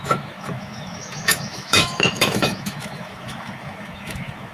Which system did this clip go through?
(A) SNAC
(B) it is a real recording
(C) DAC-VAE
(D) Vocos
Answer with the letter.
C